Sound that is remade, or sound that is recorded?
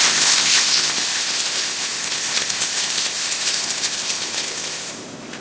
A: remade